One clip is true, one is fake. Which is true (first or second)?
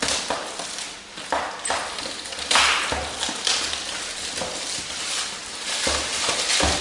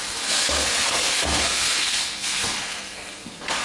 first